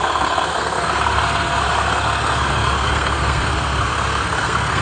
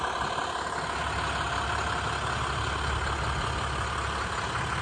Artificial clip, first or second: first